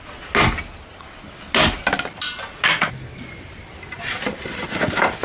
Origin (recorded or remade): recorded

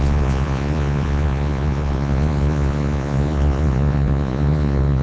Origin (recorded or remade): remade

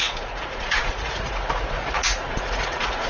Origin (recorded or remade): remade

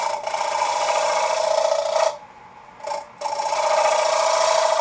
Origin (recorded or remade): recorded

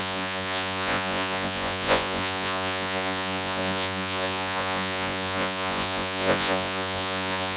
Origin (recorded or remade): remade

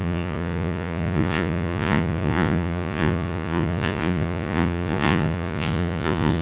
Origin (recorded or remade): remade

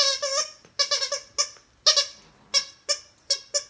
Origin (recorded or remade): recorded